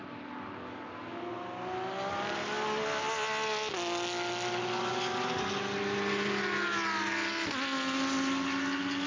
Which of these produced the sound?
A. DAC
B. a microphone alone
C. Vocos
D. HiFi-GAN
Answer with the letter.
B